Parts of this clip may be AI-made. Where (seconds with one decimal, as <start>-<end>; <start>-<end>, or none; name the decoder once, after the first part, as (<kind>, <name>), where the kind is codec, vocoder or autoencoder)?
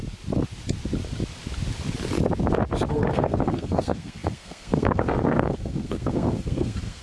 2.9-7.0 (codec, SNAC)